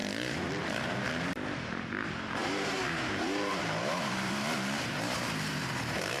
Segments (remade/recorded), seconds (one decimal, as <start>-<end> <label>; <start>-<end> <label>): 0.0-1.1 recorded; 1.1-6.2 remade

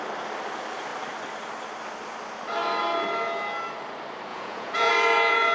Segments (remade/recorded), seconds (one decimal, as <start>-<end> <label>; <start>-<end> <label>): 0.0-4.3 recorded; 4.3-4.9 remade; 4.9-5.5 recorded

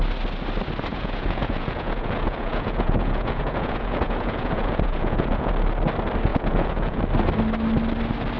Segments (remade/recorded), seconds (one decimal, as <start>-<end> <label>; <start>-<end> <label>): 0.0-0.9 recorded; 0.9-5.5 remade; 5.5-6.3 recorded; 6.3-7.0 remade; 7.0-8.4 recorded

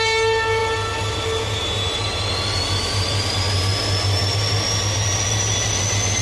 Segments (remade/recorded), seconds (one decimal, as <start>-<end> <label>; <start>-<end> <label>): 0.0-6.2 recorded

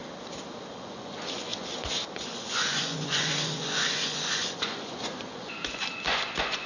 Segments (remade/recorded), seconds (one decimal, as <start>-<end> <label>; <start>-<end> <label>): 0.0-0.7 recorded; 0.7-6.7 remade